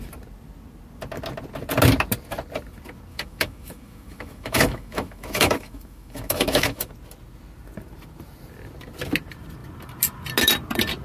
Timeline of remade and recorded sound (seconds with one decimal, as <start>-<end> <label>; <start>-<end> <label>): 0.0-3.1 recorded; 3.1-6.9 remade; 6.9-11.0 recorded